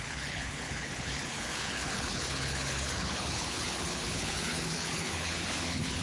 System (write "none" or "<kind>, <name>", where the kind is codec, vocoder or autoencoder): codec, HILCodec